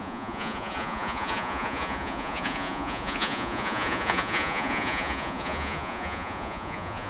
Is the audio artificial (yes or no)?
yes